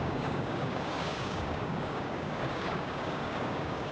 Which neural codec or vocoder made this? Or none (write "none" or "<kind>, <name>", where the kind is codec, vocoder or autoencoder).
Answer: codec, DAC